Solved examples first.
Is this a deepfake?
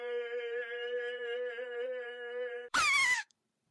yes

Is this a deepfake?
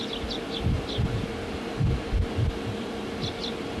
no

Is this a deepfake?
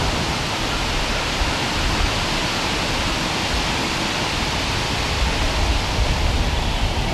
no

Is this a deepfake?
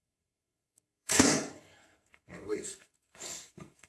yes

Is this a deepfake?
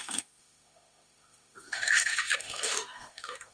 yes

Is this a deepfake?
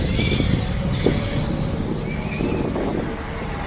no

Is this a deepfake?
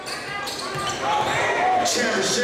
no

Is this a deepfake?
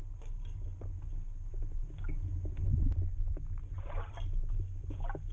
no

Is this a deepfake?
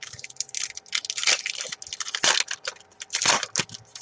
no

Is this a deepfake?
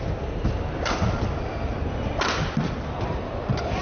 no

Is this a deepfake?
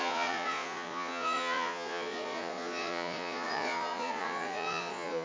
yes